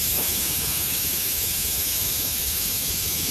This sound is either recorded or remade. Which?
remade